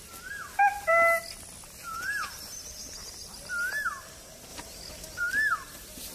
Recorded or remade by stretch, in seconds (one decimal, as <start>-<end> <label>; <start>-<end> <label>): 0.0-1.8 recorded; 1.8-2.3 remade; 2.3-6.1 recorded